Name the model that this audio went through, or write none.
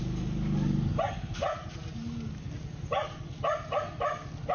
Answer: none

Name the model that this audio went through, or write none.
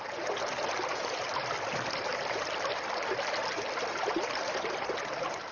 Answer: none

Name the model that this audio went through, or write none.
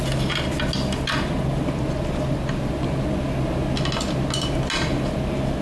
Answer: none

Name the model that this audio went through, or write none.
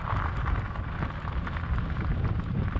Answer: none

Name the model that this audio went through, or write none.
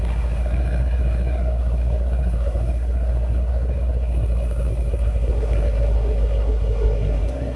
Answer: codec, SNAC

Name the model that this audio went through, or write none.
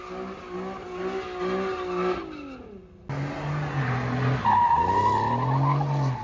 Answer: none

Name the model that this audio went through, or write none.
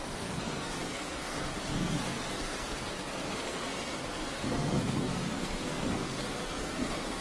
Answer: codec, SNAC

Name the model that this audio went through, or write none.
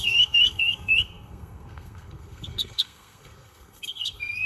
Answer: codec, SNAC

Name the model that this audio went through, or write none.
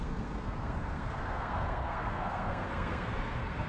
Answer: codec, SNAC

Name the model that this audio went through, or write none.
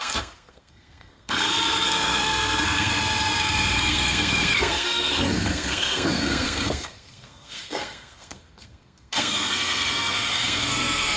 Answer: codec, SNAC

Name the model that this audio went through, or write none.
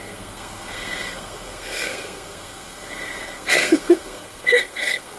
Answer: codec, SNAC